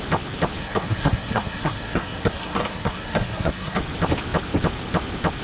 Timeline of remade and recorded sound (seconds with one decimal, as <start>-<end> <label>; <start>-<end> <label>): 0.0-0.6 recorded; 0.6-3.8 remade; 3.8-5.4 recorded

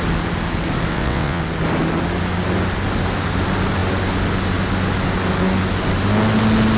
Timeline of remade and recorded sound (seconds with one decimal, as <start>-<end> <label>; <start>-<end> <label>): 0.0-0.9 recorded; 0.9-1.4 remade; 1.4-6.8 recorded

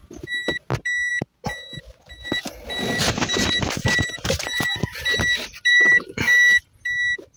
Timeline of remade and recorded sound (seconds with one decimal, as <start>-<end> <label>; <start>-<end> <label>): 0.0-5.7 recorded; 5.7-6.6 remade; 6.6-7.4 recorded

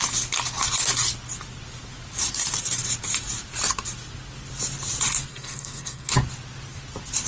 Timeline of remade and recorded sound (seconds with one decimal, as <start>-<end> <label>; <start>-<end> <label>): 0.0-5.3 recorded; 5.3-6.1 remade; 6.1-7.3 recorded

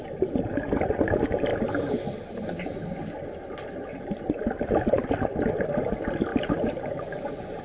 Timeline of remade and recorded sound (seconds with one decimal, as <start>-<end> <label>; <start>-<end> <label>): 0.0-6.3 recorded; 6.3-7.6 remade

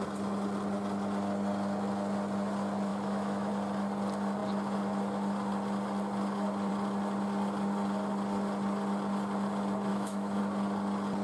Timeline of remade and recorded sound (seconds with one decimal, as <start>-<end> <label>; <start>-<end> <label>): 0.0-2.9 recorded; 2.9-3.5 remade; 3.5-9.9 recorded; 9.9-10.4 remade; 10.4-11.2 recorded

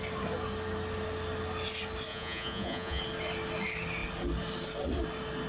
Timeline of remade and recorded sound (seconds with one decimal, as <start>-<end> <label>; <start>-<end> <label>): 0.0-2.1 recorded; 2.1-3.0 remade; 3.0-5.5 recorded